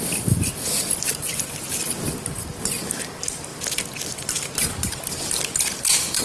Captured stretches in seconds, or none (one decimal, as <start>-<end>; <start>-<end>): 0.0-6.2